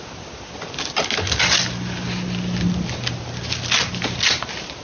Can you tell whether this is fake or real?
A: real